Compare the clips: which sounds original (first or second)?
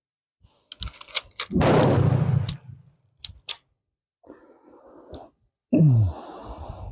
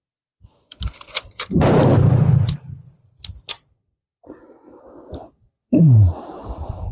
first